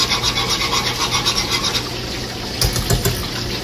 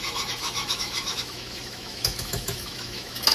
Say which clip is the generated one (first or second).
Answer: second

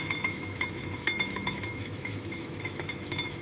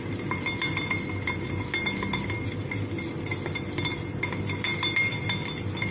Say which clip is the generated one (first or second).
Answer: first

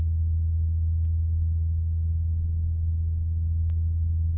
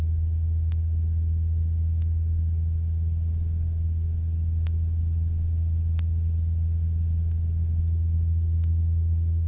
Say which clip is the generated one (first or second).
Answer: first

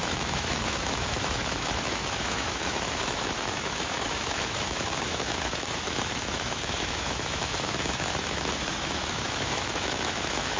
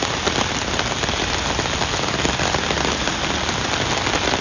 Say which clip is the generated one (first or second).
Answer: first